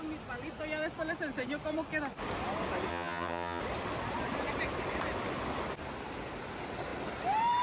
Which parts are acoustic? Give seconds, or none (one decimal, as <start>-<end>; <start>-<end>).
0.0-2.9; 3.6-7.6